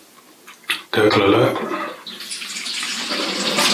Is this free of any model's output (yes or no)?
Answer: yes